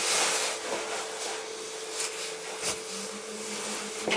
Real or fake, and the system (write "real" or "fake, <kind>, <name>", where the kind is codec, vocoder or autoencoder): real